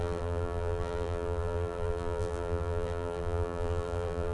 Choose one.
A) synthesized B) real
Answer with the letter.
A